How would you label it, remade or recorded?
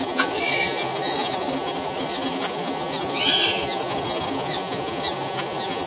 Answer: remade